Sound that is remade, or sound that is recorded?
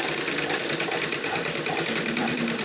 remade